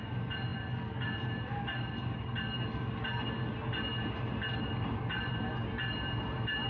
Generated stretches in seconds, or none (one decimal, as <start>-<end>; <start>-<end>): none